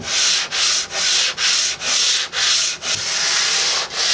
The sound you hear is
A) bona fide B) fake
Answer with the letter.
A